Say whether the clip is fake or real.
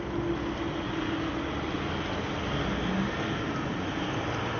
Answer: real